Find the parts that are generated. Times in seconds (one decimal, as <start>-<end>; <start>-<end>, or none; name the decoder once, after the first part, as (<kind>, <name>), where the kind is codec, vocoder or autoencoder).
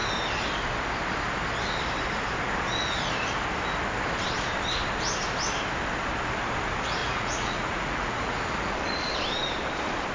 7.0-8.4 (vocoder, Vocos)